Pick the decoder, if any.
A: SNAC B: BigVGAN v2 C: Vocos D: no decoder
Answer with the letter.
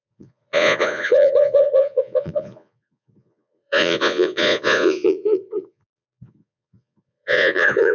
C